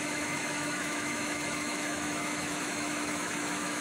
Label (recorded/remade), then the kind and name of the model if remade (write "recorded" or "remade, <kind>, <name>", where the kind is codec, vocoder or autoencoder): remade, autoencoder, DAC-VAE